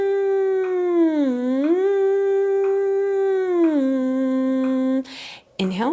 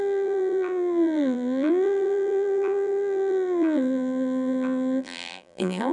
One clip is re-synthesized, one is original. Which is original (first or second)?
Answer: first